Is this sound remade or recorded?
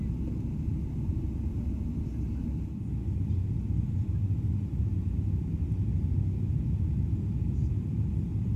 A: recorded